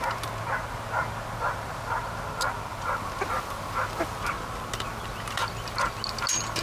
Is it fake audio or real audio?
real